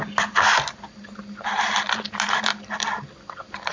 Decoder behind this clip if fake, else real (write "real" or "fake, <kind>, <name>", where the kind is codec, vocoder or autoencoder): real